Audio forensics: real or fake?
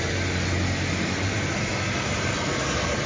real